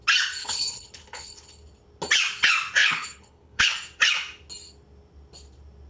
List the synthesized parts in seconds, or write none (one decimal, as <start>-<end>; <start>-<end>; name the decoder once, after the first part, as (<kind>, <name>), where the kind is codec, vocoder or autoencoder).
0.4-1.6 (codec, HILCodec); 2.8-3.7